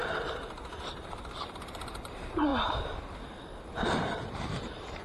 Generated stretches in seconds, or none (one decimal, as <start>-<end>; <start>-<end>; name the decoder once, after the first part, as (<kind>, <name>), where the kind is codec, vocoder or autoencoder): 0.8-2.5 (vocoder, BigVGAN v2); 4.3-5.0